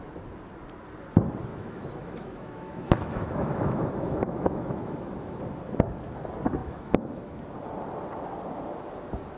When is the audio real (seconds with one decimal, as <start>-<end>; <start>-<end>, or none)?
0.0-1.5; 5.4-6.6; 7.4-9.4